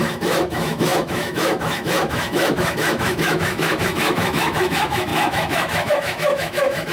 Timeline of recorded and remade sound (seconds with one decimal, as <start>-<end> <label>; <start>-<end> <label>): 0.0-6.9 remade